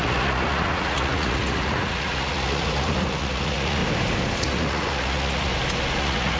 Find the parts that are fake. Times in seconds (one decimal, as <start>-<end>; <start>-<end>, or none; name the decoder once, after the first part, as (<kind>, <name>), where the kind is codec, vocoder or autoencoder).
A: 0.0-3.8 (vocoder, Vocos); 4.4-5.5; 6.0-6.4